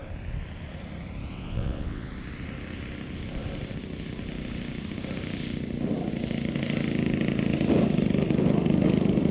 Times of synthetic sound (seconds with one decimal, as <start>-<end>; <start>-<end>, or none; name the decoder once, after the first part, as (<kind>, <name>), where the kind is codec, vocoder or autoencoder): 1.3-2.1 (vocoder, WaveNeXt)